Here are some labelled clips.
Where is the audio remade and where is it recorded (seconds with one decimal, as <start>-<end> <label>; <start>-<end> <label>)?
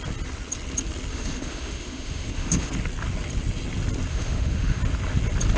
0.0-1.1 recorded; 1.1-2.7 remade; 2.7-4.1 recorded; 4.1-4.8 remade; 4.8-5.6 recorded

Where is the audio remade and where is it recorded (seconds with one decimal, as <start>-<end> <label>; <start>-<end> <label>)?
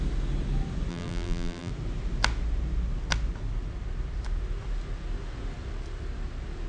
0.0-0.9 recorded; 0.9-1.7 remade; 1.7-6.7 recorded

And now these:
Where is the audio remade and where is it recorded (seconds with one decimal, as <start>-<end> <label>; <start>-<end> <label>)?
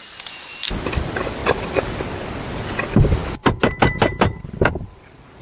0.0-5.4 recorded